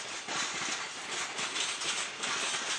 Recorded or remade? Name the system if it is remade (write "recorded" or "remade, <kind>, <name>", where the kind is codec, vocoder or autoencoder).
recorded